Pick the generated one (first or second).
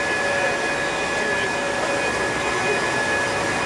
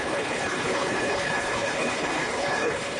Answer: second